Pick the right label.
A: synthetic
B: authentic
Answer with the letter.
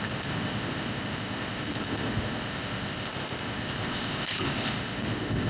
A